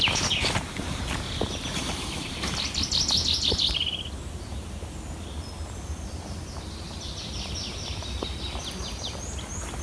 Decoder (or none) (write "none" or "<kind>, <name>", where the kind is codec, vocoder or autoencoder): none